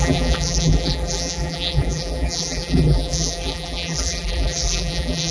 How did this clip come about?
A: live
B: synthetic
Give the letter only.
B